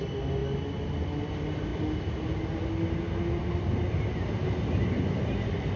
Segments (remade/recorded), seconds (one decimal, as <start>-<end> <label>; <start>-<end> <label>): 0.0-5.8 recorded